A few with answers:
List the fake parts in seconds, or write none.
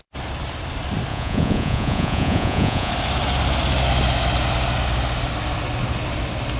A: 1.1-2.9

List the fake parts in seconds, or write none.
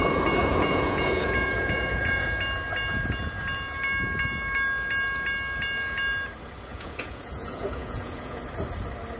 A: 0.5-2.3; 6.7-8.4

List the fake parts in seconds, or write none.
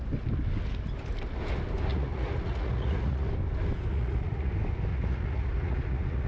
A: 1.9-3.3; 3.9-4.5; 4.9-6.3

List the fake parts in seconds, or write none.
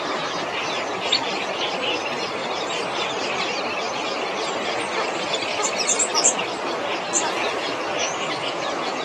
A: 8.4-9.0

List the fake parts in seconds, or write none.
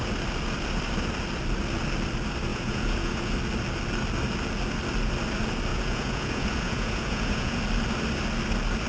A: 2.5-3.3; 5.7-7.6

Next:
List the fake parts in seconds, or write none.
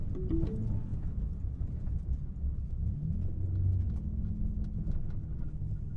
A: 0.9-3.2